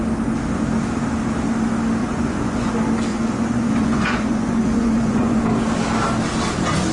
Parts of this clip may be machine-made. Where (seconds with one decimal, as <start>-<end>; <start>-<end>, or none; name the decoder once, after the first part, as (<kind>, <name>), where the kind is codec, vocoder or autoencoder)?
2.0-2.7 (vocoder, Vocos); 3.1-5.4